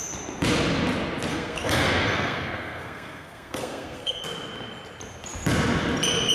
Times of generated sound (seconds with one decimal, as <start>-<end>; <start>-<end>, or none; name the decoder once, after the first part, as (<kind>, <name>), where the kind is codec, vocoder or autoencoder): 1.3-4.2 (codec, SNAC)